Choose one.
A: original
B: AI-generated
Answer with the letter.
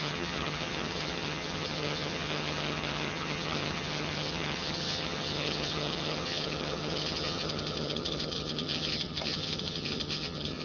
B